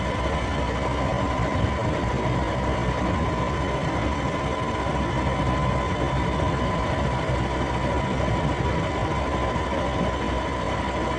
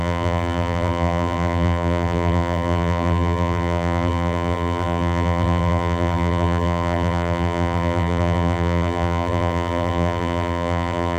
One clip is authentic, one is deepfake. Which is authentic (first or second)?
first